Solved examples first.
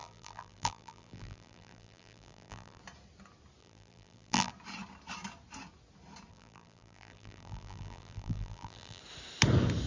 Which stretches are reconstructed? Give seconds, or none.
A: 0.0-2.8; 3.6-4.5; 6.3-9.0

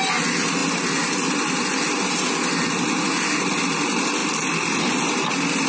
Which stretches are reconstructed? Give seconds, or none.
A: none

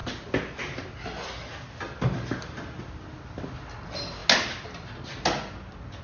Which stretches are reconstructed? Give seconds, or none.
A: none

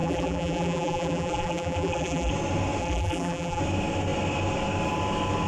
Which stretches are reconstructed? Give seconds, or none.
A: 0.0-2.3; 2.8-3.6

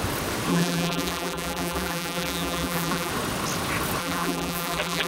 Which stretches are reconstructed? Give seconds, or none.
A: 0.5-3.1; 4.0-5.1

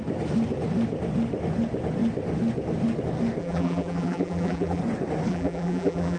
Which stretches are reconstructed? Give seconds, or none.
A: 3.4-4.8; 5.3-6.2